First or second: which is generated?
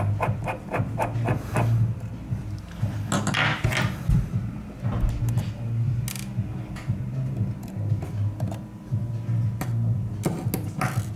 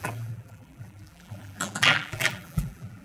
second